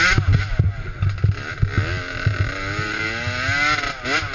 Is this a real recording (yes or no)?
yes